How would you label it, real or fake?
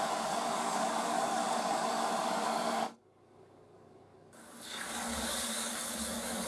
fake